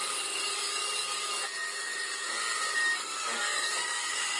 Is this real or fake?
fake